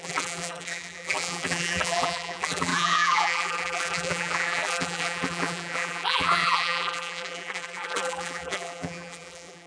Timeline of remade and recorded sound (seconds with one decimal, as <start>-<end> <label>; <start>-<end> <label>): 0.0-9.7 remade